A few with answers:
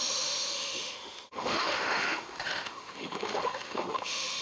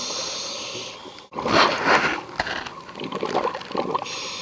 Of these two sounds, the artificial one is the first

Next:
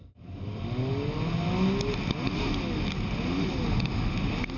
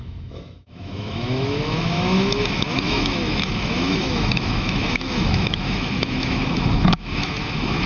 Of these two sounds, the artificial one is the second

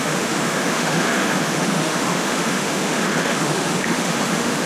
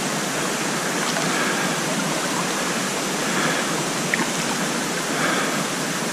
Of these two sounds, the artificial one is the first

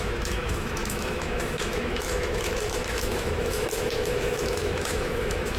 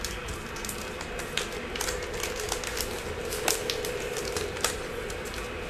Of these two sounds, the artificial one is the first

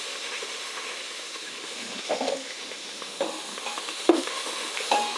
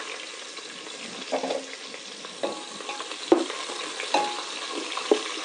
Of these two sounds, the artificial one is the first